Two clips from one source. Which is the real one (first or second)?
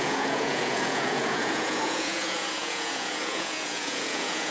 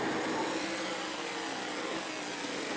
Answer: second